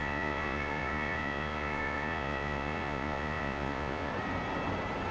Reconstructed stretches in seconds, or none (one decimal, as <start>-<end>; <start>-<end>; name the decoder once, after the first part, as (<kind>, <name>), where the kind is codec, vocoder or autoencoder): 0.0-4.1 (vocoder, Vocos)

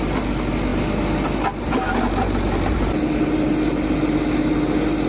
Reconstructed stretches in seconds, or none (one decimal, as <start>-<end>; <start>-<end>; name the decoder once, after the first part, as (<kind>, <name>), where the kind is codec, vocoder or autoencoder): none

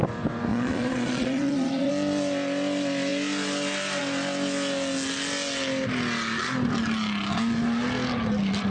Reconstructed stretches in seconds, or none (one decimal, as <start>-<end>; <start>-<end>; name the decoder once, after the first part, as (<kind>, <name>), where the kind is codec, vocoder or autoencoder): 0.5-1.9 (vocoder, Vocos)

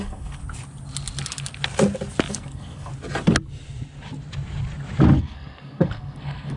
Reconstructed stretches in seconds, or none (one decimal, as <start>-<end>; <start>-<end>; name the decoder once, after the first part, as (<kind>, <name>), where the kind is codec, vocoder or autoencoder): 0.0-0.4 (codec, SNAC); 2.3-2.9; 5.2-6.6